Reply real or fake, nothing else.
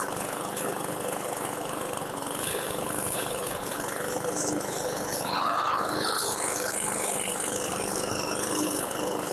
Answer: fake